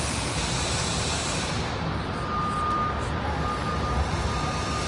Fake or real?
real